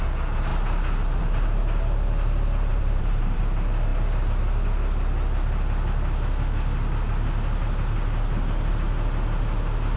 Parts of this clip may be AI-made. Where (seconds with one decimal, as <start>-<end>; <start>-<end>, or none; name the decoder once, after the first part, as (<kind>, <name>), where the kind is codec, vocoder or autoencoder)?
2.7-3.4 (vocoder, BigVGAN v2)